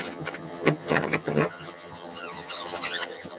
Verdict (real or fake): fake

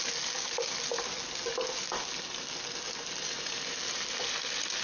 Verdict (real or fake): real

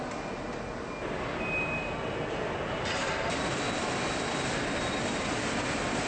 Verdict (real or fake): real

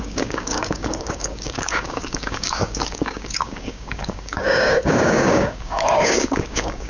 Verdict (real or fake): fake